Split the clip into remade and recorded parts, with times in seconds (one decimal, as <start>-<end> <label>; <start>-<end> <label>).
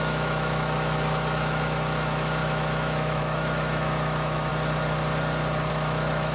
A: 0.0-4.5 remade; 4.5-5.7 recorded; 5.7-6.3 remade